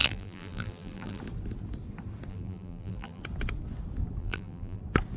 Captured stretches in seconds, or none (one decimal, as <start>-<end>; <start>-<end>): 1.2-2.3; 3.2-4.2; 4.8-5.2